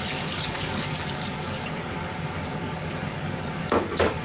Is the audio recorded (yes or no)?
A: no